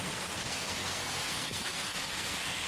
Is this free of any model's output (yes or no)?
no